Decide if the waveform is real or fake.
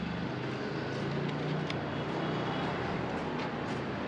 real